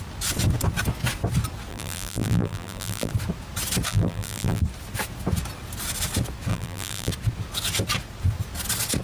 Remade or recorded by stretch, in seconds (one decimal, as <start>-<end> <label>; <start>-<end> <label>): 0.0-1.7 recorded; 1.7-3.1 remade; 3.1-3.9 recorded; 3.9-4.6 remade; 4.6-6.5 recorded; 6.5-7.1 remade; 7.1-9.0 recorded